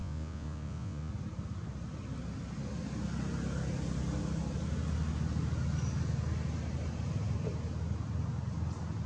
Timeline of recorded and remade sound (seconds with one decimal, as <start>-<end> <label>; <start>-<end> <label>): 0.0-1.1 remade; 1.1-9.1 recorded